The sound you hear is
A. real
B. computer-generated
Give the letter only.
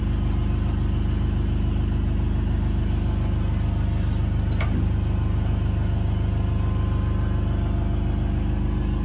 A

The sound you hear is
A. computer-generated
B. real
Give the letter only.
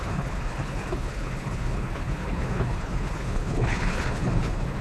A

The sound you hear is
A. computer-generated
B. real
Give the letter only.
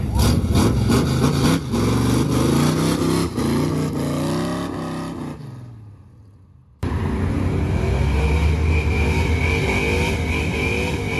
B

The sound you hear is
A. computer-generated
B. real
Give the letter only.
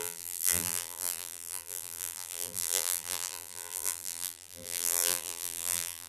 A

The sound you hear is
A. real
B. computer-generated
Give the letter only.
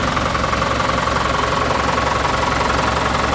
A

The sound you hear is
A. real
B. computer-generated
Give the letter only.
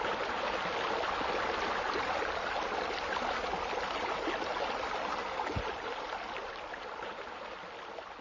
A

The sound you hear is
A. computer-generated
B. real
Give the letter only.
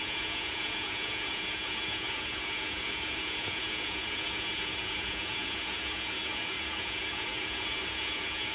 A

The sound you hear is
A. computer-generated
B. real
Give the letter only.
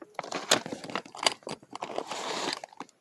B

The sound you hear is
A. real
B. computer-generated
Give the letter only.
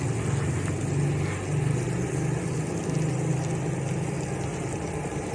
A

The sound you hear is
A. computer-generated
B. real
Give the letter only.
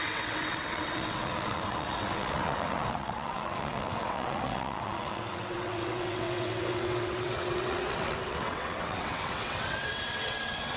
A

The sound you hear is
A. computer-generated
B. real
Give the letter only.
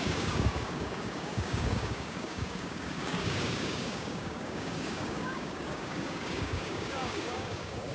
A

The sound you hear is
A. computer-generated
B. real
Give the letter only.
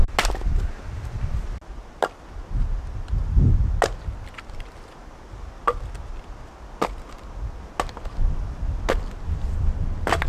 B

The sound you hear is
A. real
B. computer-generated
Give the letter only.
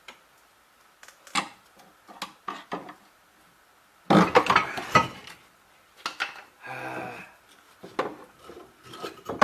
A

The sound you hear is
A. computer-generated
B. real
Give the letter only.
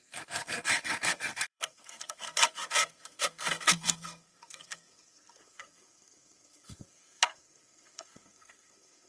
A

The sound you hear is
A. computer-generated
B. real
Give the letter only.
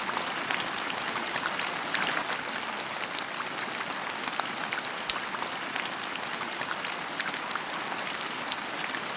B